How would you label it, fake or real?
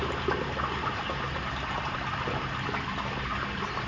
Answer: real